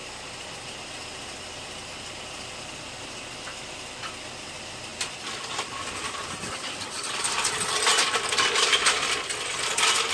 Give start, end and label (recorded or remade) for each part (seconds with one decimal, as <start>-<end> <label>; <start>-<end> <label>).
0.0-10.1 recorded